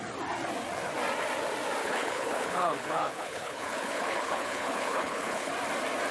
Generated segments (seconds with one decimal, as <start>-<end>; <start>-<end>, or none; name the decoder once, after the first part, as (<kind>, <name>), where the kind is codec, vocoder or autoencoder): 1.8-5.5 (codec, HILCodec)